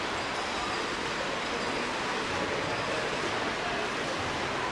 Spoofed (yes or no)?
no